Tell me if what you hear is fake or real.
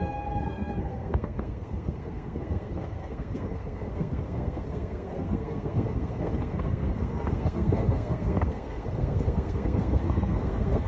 fake